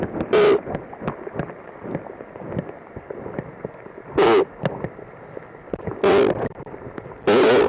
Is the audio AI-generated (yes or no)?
no